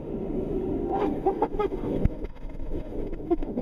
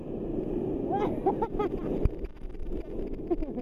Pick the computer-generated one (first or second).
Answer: first